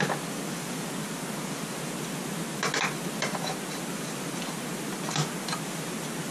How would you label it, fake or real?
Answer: real